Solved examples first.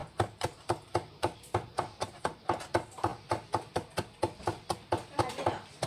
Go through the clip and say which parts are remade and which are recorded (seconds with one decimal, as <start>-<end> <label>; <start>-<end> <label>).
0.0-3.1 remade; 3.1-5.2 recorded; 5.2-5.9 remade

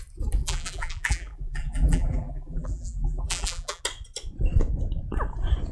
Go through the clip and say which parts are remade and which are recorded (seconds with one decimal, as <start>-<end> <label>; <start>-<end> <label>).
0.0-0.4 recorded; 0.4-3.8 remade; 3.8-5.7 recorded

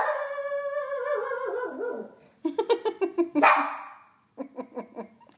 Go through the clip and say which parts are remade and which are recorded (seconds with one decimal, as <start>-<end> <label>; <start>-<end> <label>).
0.0-5.4 recorded

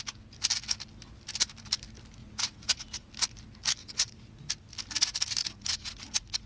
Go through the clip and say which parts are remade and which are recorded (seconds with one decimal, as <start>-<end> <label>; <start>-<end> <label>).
0.0-2.2 recorded; 2.2-3.1 remade; 3.1-3.8 recorded; 3.8-4.4 remade; 4.4-5.4 recorded; 5.4-6.5 remade